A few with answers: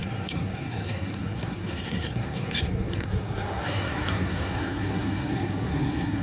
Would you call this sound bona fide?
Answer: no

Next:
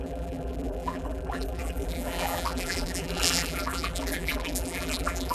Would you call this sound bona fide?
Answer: no